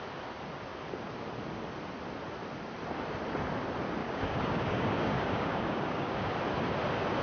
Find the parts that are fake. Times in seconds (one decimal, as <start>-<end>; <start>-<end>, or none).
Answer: 4.0-6.3